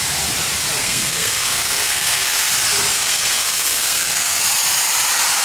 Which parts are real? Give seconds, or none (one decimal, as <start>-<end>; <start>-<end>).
0.0-0.8; 2.5-2.9; 4.4-5.4